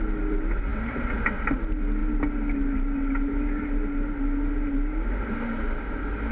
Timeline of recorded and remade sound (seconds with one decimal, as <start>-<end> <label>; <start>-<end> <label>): 0.0-6.3 recorded